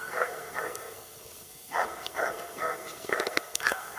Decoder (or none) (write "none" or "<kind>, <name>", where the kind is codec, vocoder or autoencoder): codec, SNAC